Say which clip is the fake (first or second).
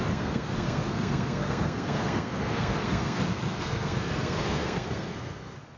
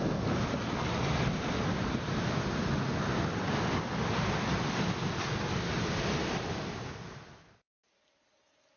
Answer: first